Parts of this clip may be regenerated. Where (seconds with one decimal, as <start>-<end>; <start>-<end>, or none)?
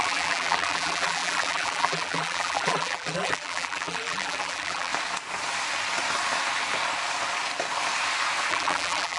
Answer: 0.0-4.9; 8.5-9.2